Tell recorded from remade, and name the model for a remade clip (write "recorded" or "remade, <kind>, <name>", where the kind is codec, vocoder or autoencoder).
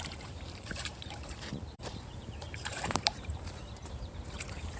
remade, vocoder, BigVGAN v2